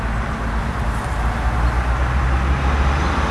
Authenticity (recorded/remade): recorded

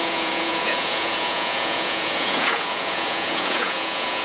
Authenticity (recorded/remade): remade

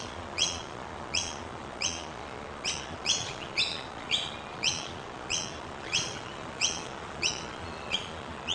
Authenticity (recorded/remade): remade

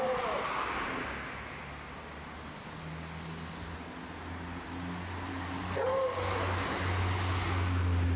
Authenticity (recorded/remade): recorded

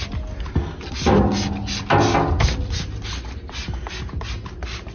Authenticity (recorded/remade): recorded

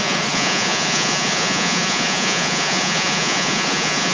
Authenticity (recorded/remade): remade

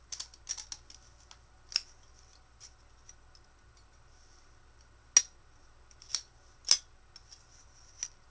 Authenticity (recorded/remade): recorded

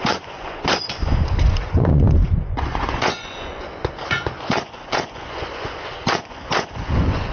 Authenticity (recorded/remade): remade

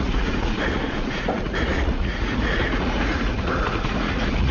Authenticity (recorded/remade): remade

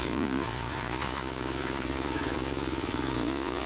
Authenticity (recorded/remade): remade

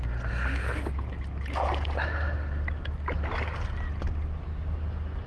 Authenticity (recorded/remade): recorded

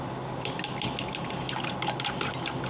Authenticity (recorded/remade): recorded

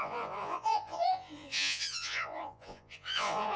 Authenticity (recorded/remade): remade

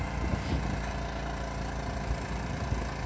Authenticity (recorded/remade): recorded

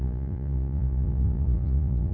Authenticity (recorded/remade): remade